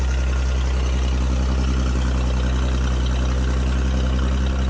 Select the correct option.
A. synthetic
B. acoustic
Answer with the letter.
B